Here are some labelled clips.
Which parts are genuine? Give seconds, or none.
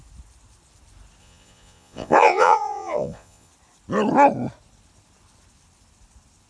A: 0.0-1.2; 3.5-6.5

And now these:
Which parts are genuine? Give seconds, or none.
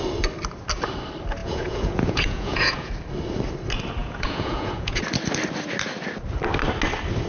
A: 0.0-1.4; 2.9-4.0; 5.0-7.3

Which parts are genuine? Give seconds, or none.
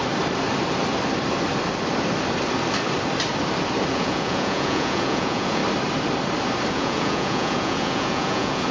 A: 0.0-3.9; 5.6-6.7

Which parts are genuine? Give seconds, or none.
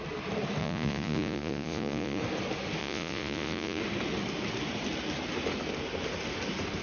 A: 0.0-0.6; 2.2-2.8; 3.8-6.8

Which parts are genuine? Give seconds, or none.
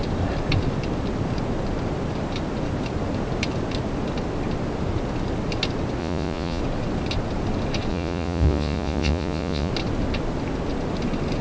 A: 0.0-6.0; 6.6-7.9; 9.7-11.4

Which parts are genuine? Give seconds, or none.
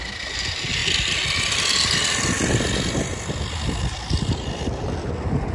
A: 0.0-5.5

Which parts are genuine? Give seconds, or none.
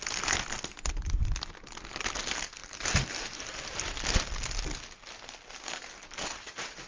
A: 0.0-6.9